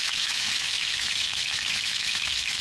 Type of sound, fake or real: fake